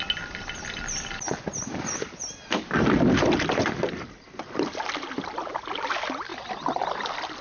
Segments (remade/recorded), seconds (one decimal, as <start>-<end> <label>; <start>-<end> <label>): 0.0-7.4 recorded